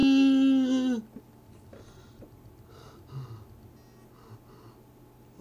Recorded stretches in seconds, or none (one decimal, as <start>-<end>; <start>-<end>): 0.0-5.4